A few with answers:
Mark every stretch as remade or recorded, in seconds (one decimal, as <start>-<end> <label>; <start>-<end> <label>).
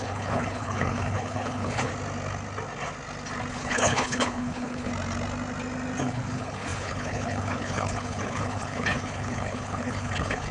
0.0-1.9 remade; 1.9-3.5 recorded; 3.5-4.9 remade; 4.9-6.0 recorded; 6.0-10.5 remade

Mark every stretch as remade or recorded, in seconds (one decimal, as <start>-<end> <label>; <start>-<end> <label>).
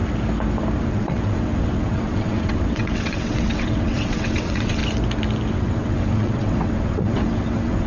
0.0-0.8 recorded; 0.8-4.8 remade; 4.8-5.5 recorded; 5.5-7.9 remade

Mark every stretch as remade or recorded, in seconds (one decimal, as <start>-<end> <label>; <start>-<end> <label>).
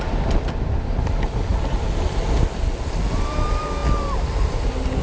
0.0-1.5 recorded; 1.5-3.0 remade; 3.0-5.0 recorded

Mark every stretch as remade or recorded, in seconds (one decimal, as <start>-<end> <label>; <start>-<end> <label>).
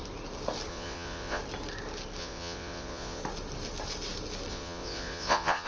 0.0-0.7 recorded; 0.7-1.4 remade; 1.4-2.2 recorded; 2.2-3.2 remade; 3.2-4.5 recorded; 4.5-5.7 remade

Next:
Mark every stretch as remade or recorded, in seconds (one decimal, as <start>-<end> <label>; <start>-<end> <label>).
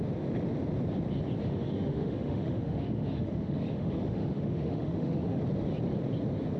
0.0-1.4 recorded; 1.4-5.4 remade; 5.4-6.6 recorded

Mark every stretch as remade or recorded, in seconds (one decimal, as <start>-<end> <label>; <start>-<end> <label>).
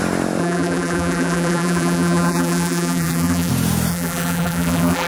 0.0-0.4 recorded; 0.4-3.5 remade; 3.5-3.9 recorded; 3.9-5.1 remade